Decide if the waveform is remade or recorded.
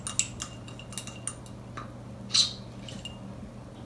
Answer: recorded